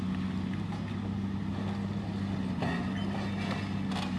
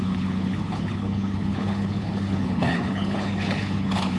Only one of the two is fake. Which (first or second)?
second